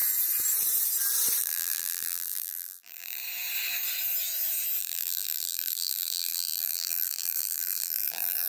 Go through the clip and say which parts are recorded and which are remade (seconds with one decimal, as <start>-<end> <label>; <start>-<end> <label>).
0.0-1.4 recorded; 1.4-3.2 remade; 3.2-4.8 recorded; 4.8-8.5 remade